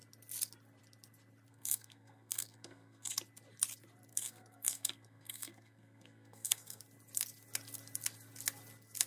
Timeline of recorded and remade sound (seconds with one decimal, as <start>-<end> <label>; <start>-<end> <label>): 0.0-1.5 recorded; 1.5-3.2 remade; 3.2-4.1 recorded; 4.1-6.8 remade; 6.8-9.1 recorded